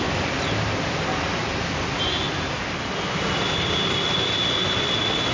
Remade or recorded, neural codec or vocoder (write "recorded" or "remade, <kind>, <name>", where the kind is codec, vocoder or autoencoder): recorded